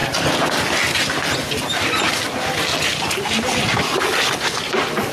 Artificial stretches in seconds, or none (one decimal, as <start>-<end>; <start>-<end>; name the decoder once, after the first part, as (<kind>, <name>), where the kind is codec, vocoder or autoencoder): none